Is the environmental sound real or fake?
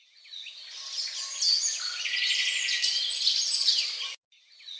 real